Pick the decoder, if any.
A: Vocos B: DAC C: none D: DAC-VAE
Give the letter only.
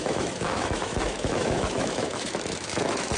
D